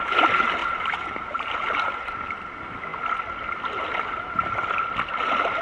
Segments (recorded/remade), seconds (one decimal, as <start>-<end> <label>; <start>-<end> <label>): 0.0-0.6 recorded; 0.6-2.0 remade; 2.0-5.6 recorded